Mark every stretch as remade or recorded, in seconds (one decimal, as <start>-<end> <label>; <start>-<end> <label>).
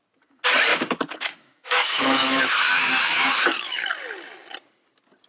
0.0-0.7 recorded; 0.7-3.9 remade; 3.9-5.3 recorded